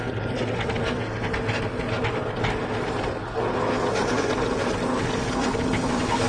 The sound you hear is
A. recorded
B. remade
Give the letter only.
A